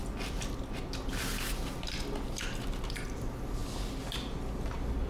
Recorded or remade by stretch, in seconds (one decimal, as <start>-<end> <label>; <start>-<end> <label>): 0.0-5.1 recorded